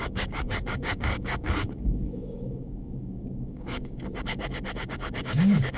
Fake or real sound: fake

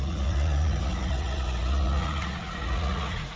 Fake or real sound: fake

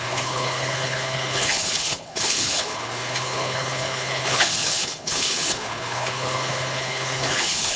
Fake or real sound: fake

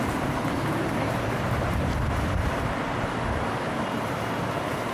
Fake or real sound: fake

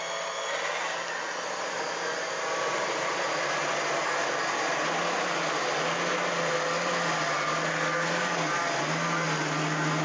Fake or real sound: real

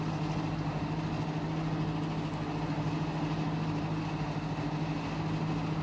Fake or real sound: real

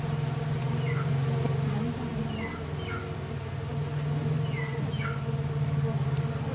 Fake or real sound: real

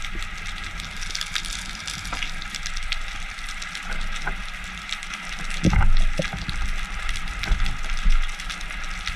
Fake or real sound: real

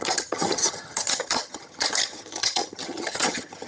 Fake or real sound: fake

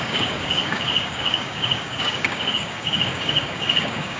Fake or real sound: fake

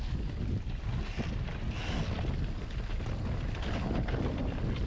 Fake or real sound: real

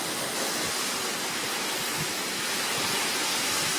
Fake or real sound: real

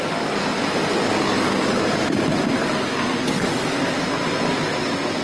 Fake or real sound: real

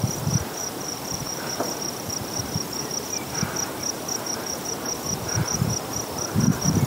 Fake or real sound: fake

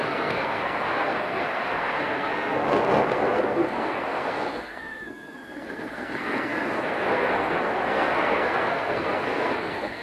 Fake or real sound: fake